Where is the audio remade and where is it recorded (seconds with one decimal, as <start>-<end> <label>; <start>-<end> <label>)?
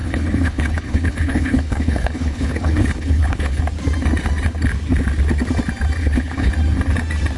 0.0-3.6 remade; 3.6-6.0 recorded; 6.0-6.5 remade; 6.5-7.4 recorded